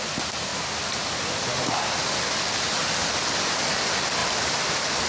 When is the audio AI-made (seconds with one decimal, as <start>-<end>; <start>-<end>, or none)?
3.0-3.7; 4.2-5.1